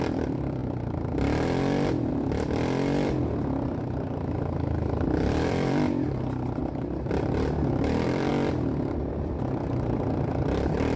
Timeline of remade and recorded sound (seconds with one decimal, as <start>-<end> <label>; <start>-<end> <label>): 0.0-0.6 remade; 0.6-2.1 recorded; 2.1-8.3 remade; 8.3-9.1 recorded; 9.1-11.0 remade